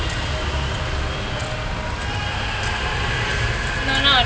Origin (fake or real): real